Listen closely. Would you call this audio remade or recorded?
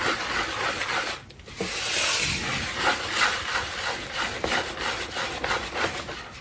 recorded